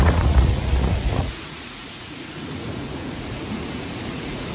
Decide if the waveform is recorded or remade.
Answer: remade